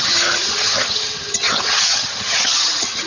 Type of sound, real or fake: fake